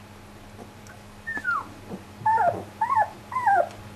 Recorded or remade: recorded